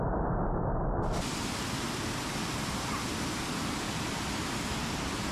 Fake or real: real